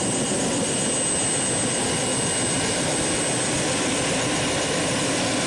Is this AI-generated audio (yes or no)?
no